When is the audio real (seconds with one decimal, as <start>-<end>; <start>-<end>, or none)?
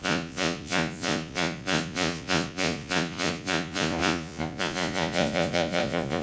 none